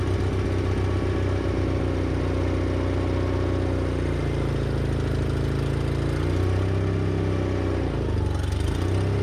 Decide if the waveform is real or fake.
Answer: real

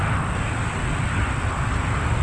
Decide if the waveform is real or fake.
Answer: real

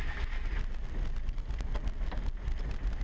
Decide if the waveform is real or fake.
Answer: real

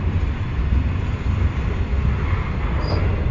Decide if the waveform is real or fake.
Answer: real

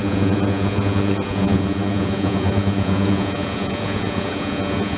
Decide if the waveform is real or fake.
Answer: fake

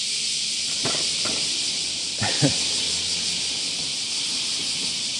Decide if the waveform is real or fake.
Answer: fake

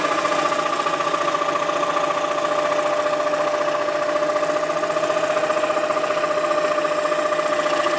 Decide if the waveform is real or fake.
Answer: real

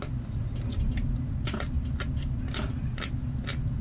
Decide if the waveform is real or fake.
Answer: real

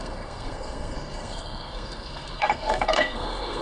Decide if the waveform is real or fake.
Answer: fake